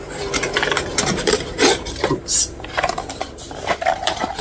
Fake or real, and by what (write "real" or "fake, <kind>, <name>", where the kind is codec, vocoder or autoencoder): fake, vocoder, BigVGAN v2